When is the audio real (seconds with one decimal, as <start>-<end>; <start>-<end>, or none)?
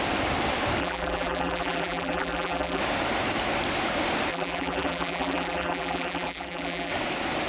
0.0-0.8; 2.8-4.3; 6.9-7.5